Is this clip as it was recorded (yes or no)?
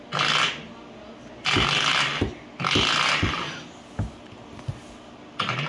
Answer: yes